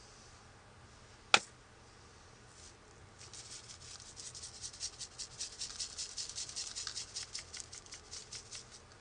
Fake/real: real